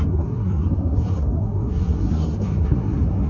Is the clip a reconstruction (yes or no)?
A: yes